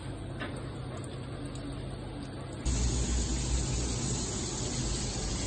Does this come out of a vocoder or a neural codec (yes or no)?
no